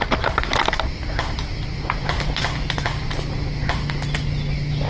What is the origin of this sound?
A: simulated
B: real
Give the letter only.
B